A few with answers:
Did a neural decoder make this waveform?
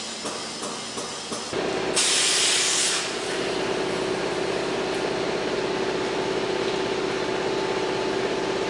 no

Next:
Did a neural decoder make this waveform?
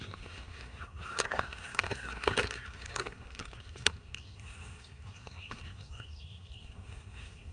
yes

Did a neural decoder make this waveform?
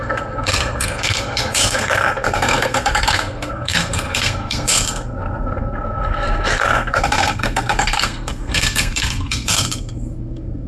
yes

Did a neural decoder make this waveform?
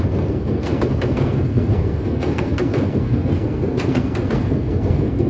yes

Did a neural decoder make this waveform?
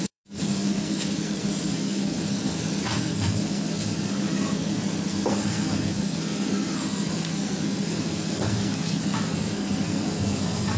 yes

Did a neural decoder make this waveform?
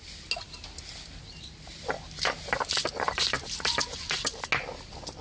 no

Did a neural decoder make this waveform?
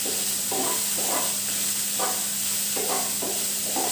no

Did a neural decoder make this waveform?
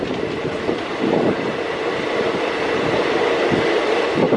no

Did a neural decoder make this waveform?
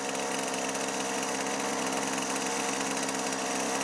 no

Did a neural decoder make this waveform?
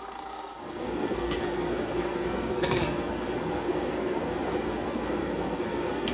yes